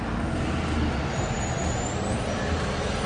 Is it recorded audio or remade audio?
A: recorded